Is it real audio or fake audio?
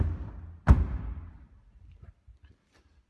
real